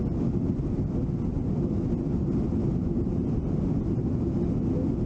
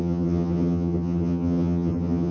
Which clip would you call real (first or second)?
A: first